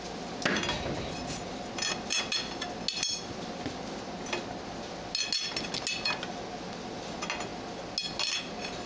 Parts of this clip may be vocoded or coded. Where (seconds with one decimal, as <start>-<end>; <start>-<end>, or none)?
none